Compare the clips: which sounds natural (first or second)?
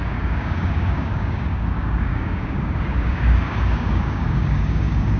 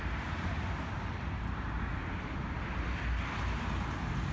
second